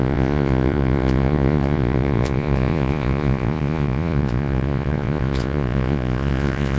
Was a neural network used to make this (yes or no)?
yes